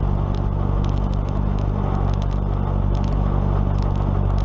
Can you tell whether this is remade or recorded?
recorded